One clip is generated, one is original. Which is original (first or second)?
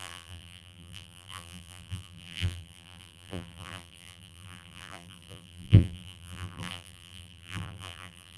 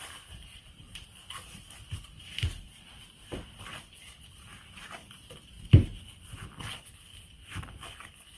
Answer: second